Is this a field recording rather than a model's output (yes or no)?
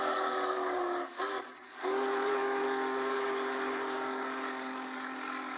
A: no